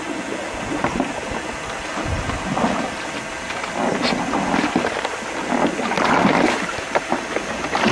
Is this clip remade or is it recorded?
recorded